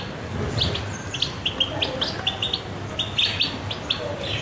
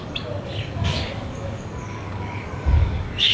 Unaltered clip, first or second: first